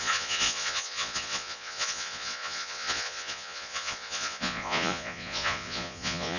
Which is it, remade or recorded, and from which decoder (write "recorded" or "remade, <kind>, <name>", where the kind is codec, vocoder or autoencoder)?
remade, vocoder, Vocos